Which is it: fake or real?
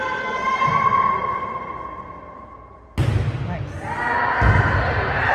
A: real